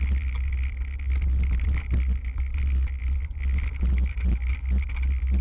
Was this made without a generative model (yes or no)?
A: yes